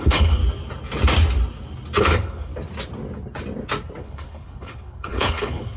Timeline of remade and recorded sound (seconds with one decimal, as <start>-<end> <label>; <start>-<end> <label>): 0.0-0.4 remade; 0.4-2.0 recorded; 2.0-2.5 remade; 2.5-4.0 recorded; 4.0-5.8 remade